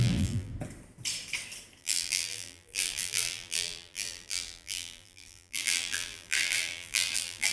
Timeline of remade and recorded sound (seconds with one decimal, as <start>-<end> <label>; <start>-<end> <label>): 0.0-0.5 remade; 0.5-1.8 recorded; 1.8-7.5 remade